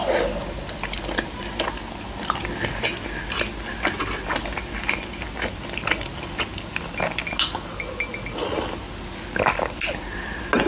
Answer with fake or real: real